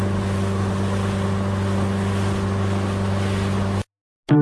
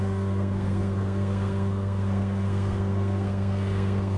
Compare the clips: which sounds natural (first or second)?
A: first